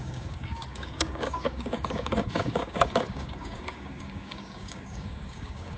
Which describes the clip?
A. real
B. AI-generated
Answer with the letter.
B